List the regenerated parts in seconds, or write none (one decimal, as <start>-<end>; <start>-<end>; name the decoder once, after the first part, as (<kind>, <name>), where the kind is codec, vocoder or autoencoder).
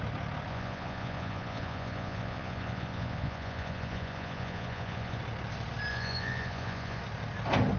0.5-5.2 (vocoder, Vocos); 5.9-7.0